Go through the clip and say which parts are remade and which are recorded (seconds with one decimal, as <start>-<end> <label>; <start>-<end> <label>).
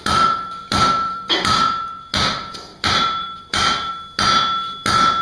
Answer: 0.0-0.6 recorded; 0.6-1.5 remade; 1.5-2.7 recorded; 2.7-3.9 remade; 3.9-5.2 recorded